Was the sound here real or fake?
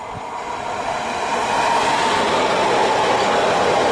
real